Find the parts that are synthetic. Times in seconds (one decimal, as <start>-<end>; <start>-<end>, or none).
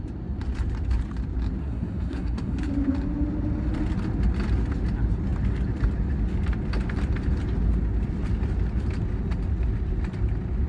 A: 1.6-2.7